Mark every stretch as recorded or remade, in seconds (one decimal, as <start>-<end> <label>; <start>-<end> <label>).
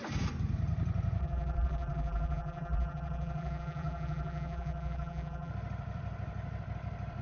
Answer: 0.0-1.2 recorded; 1.2-5.5 remade; 5.5-7.2 recorded